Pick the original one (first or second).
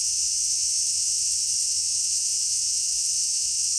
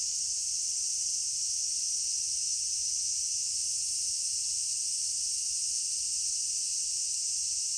second